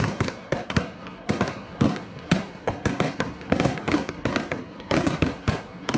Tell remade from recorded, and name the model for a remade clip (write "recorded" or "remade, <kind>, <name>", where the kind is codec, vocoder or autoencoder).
remade, codec, SNAC